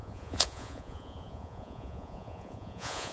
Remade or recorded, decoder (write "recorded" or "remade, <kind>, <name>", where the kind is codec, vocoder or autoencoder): remade, vocoder, Vocos